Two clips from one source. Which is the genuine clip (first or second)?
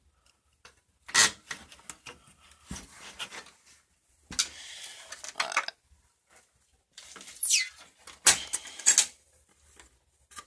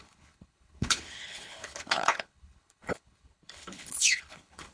first